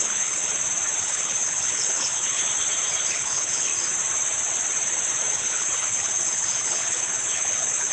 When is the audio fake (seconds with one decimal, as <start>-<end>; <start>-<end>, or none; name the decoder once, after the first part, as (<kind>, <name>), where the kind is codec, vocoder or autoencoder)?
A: 0.0-0.5 (codec, HILCodec); 1.0-2.4; 3.1-3.7; 5.3-7.9